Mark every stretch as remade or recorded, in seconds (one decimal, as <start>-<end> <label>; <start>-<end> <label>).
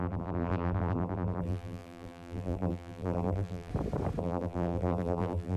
0.0-3.7 remade; 3.7-4.2 recorded; 4.2-5.6 remade